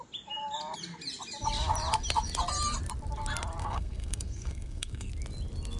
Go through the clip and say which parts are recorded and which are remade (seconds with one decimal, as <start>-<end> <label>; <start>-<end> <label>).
0.0-3.6 recorded; 3.6-5.1 remade; 5.1-5.8 recorded